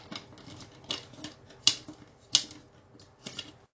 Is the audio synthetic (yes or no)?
no